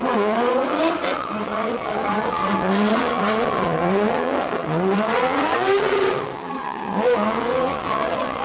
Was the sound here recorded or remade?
remade